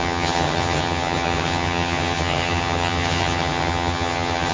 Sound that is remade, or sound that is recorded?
remade